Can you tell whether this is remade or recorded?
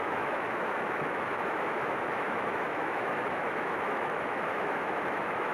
remade